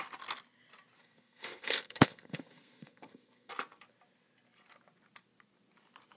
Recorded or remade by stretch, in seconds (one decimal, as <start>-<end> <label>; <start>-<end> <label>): 0.0-1.0 recorded; 1.0-3.5 remade; 3.5-6.2 recorded

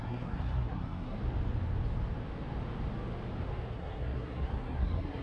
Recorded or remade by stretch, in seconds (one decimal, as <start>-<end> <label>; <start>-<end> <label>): 0.0-1.2 remade; 1.2-3.7 recorded; 3.7-5.2 remade

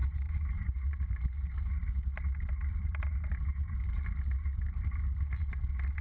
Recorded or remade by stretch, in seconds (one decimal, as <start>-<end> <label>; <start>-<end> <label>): 0.0-6.0 recorded

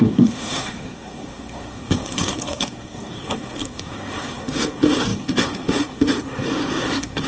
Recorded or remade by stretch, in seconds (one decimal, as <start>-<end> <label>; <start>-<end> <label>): 0.0-7.3 remade

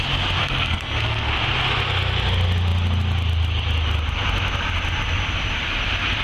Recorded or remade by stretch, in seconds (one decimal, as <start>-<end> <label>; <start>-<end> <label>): 0.0-0.4 recorded; 0.4-1.3 remade; 1.3-6.2 recorded

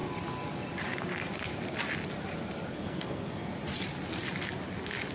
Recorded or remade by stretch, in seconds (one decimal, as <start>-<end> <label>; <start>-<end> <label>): 0.0-2.7 recorded; 2.7-3.5 remade; 3.5-5.1 recorded